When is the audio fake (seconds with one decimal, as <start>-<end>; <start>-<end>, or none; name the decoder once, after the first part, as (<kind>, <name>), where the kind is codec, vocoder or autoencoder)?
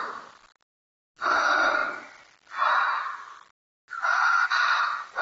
none